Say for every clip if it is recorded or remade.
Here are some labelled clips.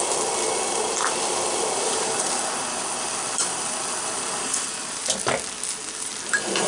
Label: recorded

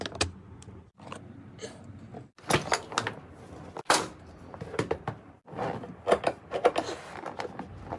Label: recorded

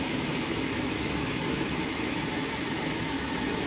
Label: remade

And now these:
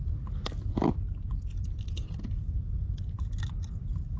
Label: recorded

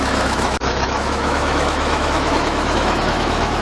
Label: remade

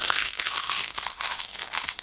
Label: remade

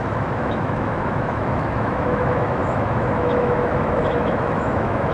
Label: remade